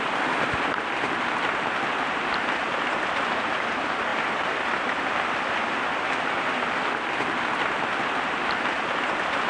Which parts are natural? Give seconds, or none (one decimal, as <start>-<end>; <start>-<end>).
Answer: 0.0-9.5